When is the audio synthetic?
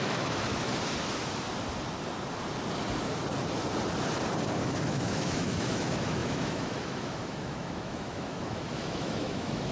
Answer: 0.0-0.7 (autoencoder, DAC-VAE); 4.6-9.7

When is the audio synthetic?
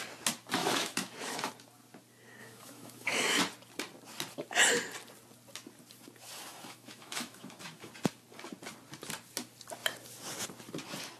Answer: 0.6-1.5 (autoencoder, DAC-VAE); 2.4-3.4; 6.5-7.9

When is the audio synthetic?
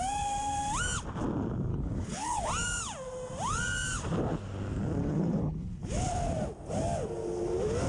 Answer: 1.7-2.5 (codec, HILCodec); 5.0-5.8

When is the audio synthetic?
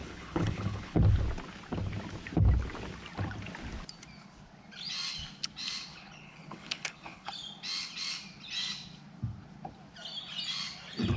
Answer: 0.0-1.0 (codec, HILCodec); 5.9-7.3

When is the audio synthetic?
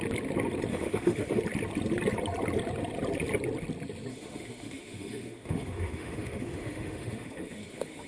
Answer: 0.7-1.4 (autoencoder, DAC-VAE); 4.1-8.1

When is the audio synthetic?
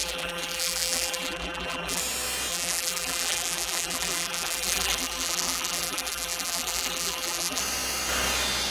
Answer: 0.0-2.0 (vocoder, BigVGAN v2); 2.5-7.6